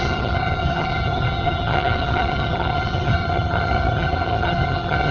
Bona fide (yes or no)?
no